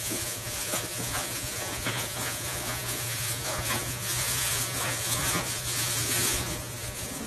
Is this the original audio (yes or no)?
no